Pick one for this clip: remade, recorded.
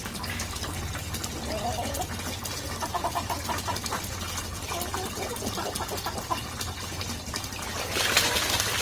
recorded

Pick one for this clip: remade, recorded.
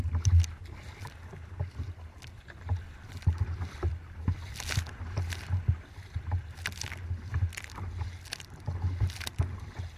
recorded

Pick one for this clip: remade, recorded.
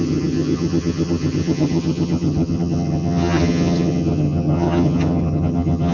remade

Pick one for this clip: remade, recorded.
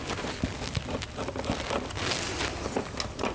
recorded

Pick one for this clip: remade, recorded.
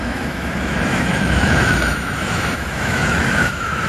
remade